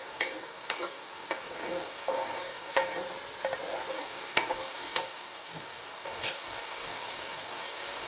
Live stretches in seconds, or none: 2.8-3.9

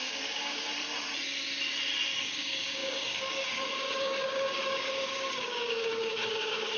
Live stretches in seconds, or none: 0.7-2.2

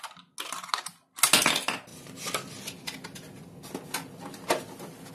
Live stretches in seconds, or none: 0.0-5.1

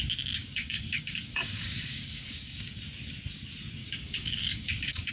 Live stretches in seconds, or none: 0.0-0.4; 2.8-3.8

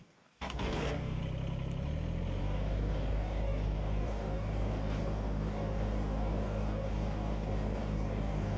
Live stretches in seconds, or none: 1.2-2.4